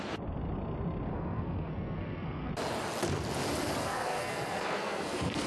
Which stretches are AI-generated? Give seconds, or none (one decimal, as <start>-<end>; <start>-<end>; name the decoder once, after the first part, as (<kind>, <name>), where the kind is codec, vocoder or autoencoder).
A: 1.1-2.5 (codec, SNAC); 3.8-5.5